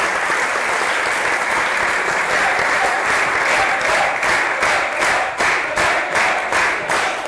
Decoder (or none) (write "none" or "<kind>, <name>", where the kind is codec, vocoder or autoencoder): none